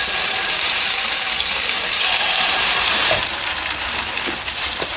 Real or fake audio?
fake